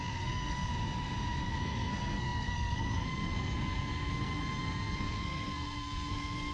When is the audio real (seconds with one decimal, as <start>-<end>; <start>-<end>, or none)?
0.7-1.4